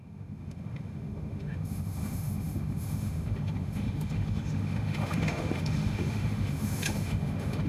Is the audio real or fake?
fake